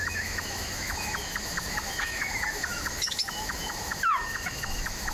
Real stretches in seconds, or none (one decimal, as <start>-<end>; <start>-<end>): none